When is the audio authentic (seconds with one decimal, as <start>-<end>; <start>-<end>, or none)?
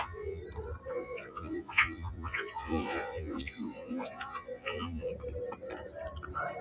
0.4-0.9; 5.1-6.6